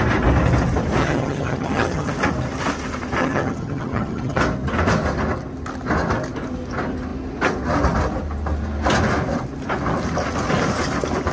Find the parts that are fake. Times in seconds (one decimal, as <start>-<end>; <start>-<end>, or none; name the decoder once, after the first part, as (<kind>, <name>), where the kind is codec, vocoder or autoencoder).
1.0-2.1 (vocoder, HiFi-GAN); 3.2-4.4